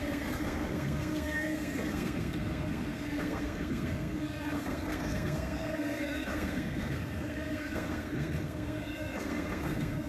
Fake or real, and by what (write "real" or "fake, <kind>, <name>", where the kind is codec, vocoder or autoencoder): fake, codec, SNAC